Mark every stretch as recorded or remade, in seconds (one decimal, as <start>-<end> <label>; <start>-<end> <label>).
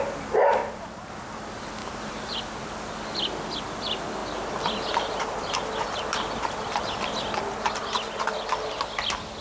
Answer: 0.0-0.6 recorded; 0.6-1.1 remade; 1.1-1.8 recorded; 1.8-2.4 remade; 2.4-9.4 recorded